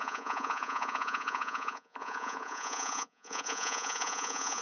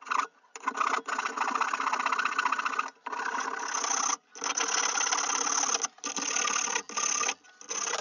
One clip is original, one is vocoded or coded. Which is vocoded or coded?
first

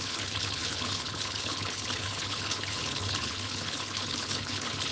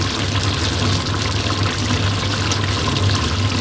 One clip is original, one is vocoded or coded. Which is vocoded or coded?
first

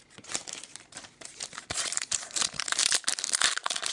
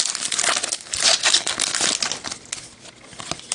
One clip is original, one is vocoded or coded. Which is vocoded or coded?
first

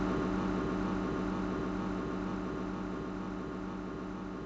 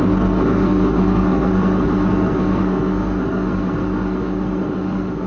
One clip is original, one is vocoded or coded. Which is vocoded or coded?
second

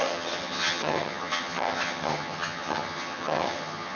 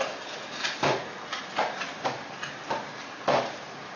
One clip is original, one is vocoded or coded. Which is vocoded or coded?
first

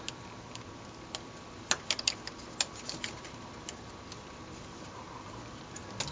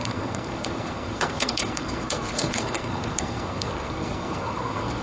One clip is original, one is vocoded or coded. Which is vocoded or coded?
second